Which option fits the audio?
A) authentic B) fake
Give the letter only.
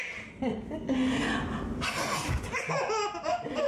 A